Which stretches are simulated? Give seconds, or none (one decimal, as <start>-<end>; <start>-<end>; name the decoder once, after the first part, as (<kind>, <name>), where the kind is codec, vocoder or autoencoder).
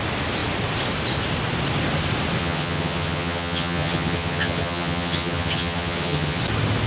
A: 2.4-6.4 (vocoder, HiFi-GAN)